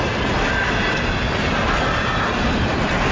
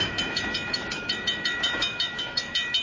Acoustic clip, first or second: first